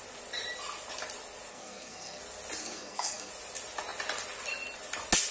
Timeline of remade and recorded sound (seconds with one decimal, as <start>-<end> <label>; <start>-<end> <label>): 0.0-1.5 recorded; 1.5-2.2 remade; 2.2-2.6 recorded; 2.6-3.3 remade; 3.3-5.3 recorded